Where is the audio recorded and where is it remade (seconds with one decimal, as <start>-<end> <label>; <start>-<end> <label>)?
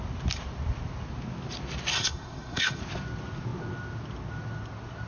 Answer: 0.0-1.9 recorded; 1.9-2.8 remade; 2.8-5.1 recorded